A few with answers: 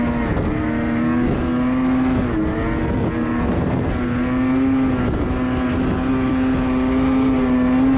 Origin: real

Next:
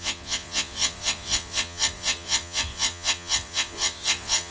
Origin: fake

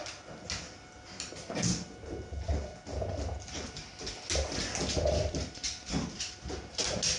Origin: real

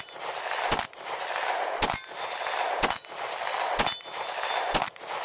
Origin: real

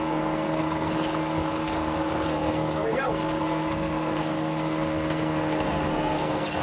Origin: fake